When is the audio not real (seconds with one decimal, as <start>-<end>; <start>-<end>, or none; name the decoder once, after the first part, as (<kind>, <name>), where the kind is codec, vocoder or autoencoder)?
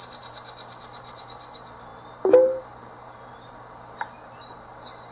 none